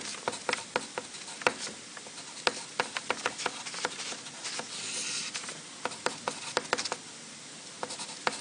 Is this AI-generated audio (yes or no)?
no